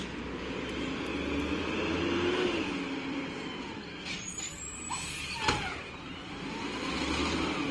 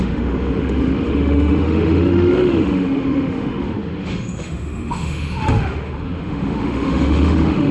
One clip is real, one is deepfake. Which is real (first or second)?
first